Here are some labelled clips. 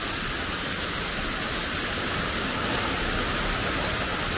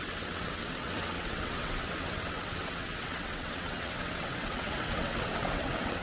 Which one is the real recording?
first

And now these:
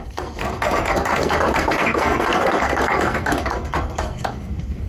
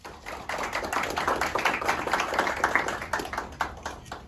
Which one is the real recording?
second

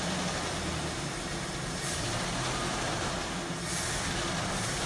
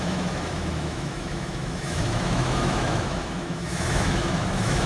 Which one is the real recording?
first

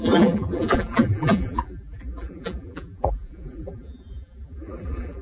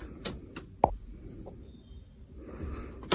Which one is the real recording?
second